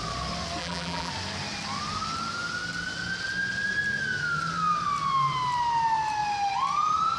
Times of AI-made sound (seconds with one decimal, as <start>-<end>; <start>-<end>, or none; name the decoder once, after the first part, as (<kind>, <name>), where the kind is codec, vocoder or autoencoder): 0.6-1.1 (vocoder, BigVGAN v2)